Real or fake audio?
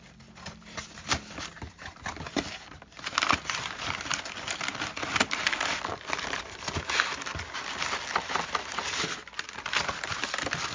real